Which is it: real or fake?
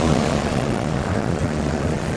fake